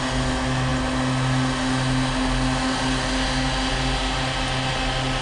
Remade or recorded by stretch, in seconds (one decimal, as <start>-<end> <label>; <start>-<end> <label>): 0.0-5.2 recorded